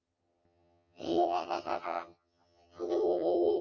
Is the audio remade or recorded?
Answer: remade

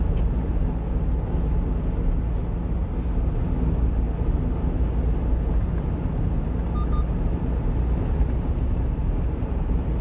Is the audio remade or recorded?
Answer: recorded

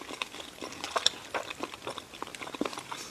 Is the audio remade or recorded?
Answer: recorded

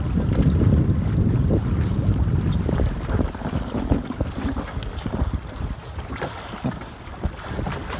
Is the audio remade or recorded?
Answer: recorded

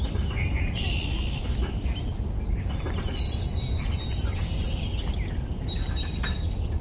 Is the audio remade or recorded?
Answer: recorded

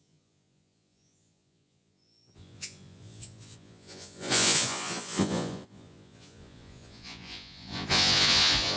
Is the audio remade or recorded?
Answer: remade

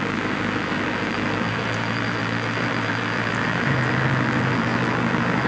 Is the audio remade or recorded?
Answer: remade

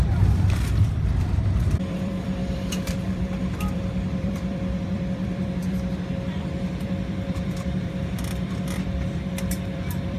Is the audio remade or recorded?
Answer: remade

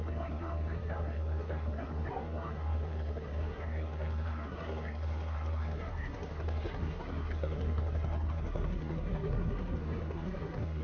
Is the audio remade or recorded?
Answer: remade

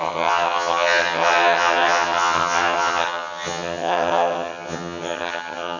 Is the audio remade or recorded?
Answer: remade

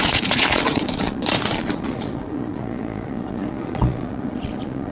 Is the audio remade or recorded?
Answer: remade